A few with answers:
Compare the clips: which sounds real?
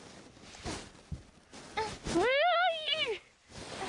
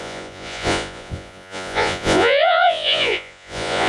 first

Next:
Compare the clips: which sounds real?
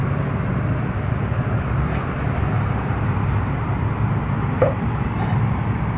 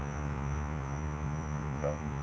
first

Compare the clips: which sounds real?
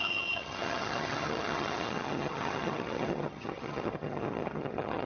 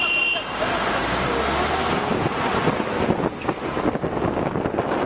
second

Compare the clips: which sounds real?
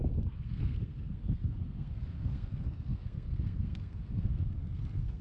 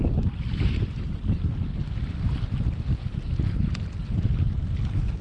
second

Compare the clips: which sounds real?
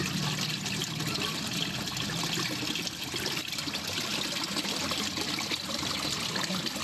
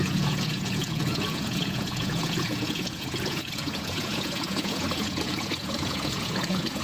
first